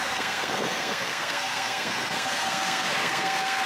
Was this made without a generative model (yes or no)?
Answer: no